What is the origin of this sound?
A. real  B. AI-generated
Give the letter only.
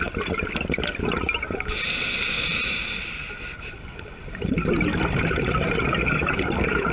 A